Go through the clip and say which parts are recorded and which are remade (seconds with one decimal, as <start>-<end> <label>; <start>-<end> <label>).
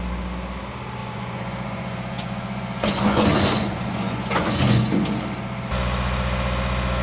0.0-1.0 recorded; 1.0-5.2 remade; 5.2-7.0 recorded